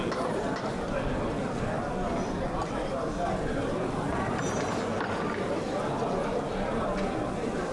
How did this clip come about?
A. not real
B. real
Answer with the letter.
B